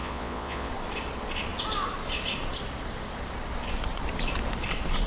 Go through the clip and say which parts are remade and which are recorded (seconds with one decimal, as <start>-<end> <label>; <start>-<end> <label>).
0.0-0.7 remade; 0.7-5.1 recorded